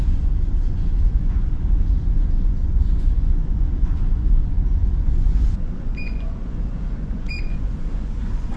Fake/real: fake